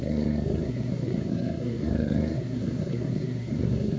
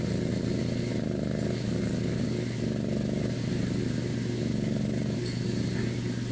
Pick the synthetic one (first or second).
first